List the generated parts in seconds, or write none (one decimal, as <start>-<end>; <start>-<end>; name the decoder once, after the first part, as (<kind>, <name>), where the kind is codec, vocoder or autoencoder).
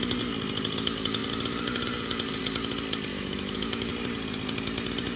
3.1-3.9 (autoencoder, DAC-VAE)